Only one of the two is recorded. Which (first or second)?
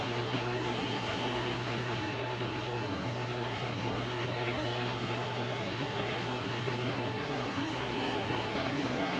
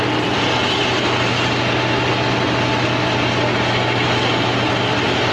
second